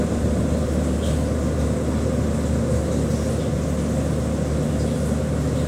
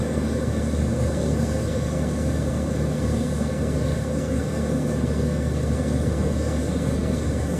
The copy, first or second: second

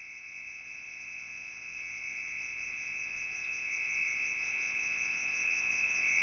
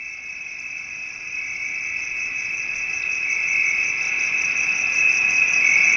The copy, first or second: first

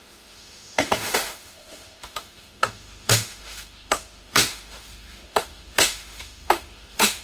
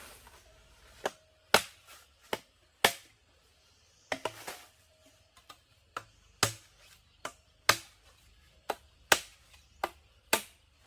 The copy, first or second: first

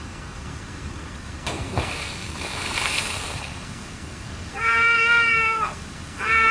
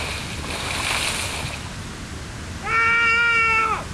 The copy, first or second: first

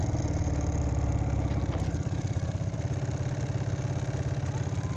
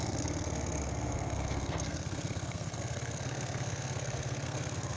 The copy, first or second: second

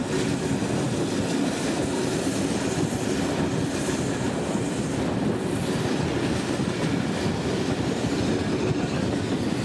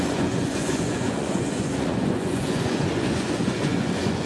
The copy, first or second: second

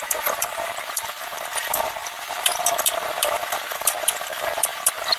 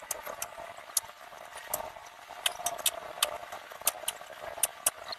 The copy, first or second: first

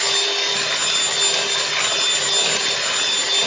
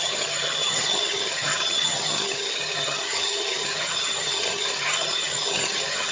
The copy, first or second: second